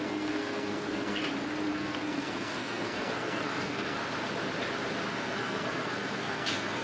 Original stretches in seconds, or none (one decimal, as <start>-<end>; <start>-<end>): 1.2-1.7; 4.0-5.1